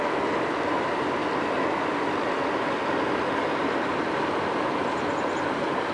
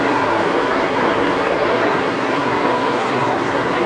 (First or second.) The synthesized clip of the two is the second